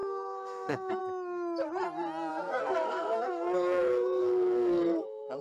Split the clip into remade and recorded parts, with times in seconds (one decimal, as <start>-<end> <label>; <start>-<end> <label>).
0.0-1.0 remade; 1.0-2.3 recorded; 2.3-5.4 remade